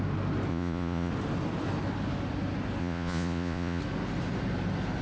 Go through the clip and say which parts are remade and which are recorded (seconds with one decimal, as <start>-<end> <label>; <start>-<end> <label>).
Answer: 0.0-0.5 recorded; 0.5-1.1 remade; 1.1-2.8 recorded; 2.8-3.8 remade; 3.8-5.0 recorded